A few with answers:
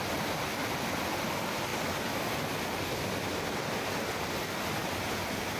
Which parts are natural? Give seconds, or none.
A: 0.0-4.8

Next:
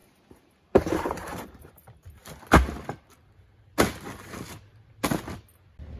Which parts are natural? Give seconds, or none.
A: 1.7-6.0